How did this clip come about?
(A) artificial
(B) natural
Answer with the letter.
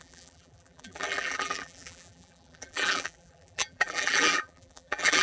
A